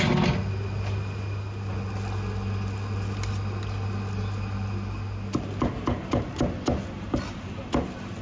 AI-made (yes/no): no